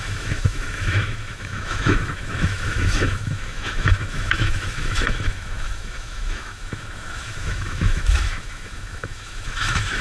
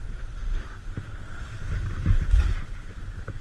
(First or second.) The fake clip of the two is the first